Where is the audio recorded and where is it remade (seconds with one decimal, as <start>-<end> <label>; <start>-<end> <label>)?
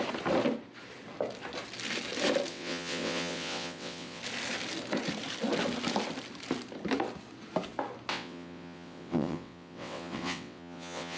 0.0-2.5 recorded; 2.5-4.2 remade; 4.2-8.1 recorded; 8.1-11.2 remade